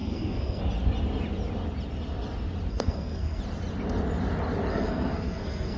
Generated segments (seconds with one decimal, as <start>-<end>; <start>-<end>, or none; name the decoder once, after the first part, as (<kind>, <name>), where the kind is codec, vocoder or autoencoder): 0.0-0.6 (codec, SNAC); 2.7-3.4; 4.7-5.8